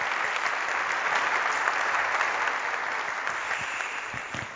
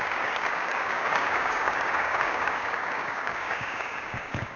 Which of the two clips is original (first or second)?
first